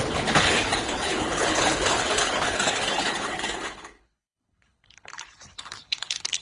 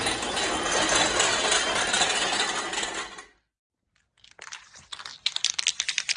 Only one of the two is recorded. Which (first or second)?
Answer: second